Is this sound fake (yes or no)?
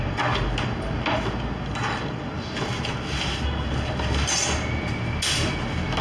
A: no